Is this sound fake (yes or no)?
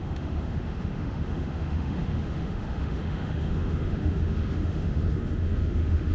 yes